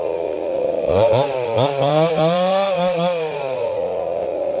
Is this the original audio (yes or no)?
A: no